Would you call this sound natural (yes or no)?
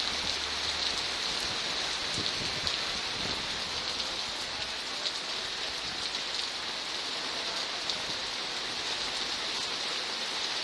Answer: yes